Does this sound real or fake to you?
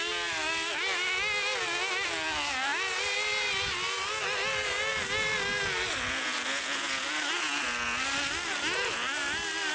real